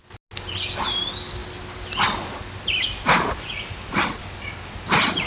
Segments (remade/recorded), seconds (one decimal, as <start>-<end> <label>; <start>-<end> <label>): 0.0-5.3 recorded